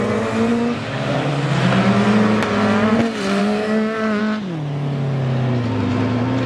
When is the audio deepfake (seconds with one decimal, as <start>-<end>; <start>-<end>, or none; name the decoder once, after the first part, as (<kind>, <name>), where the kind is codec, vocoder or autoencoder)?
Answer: 0.5-1.3 (codec, DAC); 3.4-4.2

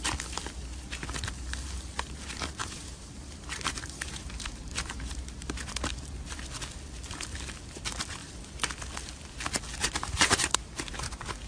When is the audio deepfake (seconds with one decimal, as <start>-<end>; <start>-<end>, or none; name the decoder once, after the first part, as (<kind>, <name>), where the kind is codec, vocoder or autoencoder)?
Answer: 2.6-5.9 (vocoder, BigVGAN v2); 8.2-8.7; 9.8-11.1

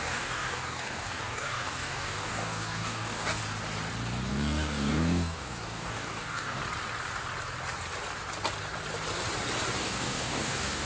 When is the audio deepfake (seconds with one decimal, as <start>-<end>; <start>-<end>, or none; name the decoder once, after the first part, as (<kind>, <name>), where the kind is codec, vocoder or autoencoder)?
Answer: 0.0-3.4 (codec, DAC); 4.3-6.6; 9.8-10.9

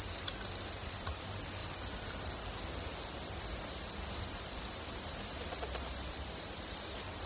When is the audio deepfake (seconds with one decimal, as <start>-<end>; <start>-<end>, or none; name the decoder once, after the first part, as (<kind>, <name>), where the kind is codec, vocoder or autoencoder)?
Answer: 0.0-1.6 (vocoder, BigVGAN v2); 4.4-7.3

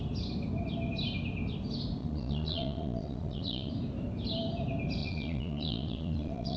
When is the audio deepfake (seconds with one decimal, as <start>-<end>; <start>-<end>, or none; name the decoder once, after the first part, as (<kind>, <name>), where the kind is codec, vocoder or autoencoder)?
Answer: 2.0-3.7 (vocoder, Vocos); 5.0-6.6

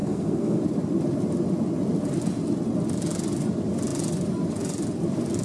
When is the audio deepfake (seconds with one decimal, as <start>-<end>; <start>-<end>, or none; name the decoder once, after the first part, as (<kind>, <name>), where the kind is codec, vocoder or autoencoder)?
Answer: 0.0-0.6 (codec, SNAC)

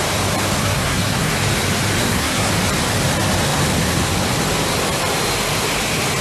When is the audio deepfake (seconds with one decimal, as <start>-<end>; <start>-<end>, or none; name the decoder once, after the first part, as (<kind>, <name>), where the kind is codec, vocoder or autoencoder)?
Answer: 0.6-1.3 (codec, SNAC); 2.0-2.5

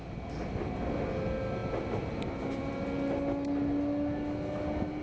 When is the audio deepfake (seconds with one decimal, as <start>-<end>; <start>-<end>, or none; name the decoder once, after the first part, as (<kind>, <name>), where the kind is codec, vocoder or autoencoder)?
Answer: none